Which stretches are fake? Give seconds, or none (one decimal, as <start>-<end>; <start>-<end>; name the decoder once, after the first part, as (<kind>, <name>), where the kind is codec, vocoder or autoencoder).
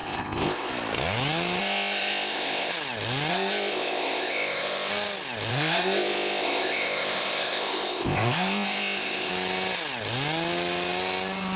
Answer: 0.0-0.7 (codec, ZipCodec); 1.6-2.7; 3.3-4.9; 5.5-9.3